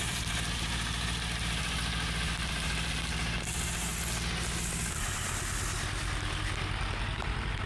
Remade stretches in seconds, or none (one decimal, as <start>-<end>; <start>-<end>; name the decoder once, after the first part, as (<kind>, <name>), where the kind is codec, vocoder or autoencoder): 0.0-3.9 (vocoder, BigVGAN v2); 7.0-7.7